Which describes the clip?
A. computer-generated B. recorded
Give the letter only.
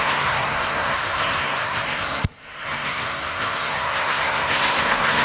A